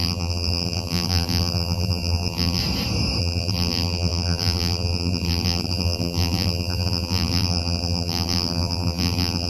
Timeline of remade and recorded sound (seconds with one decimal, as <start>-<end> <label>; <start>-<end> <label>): 0.0-2.6 remade; 2.6-3.2 recorded; 3.2-9.5 remade